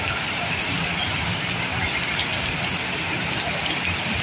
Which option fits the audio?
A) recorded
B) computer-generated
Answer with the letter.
A